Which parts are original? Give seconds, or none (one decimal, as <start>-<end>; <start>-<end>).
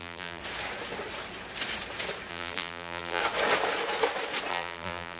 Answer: 0.4-2.3; 3.2-4.5